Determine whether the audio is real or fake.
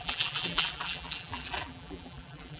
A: fake